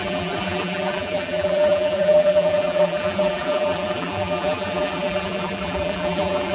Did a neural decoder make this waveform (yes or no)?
yes